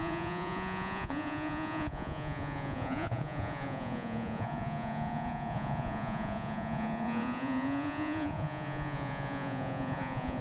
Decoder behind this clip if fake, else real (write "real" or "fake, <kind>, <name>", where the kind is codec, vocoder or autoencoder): fake, vocoder, Vocos